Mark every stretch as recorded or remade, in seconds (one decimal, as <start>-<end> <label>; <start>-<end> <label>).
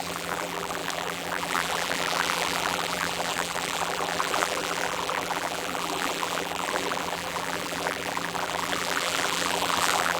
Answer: 0.0-10.2 remade